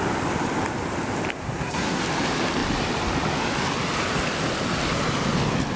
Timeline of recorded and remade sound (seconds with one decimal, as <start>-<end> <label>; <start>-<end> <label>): 0.0-1.4 recorded; 1.4-2.0 remade; 2.0-5.8 recorded